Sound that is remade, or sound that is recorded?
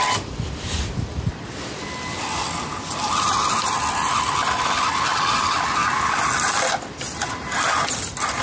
recorded